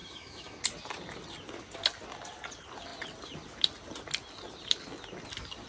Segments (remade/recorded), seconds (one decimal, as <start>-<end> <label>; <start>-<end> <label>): 0.0-0.6 remade; 0.6-5.7 recorded